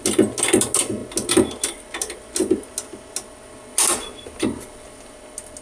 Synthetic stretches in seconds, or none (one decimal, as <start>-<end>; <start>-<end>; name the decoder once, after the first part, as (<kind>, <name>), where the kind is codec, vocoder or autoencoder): none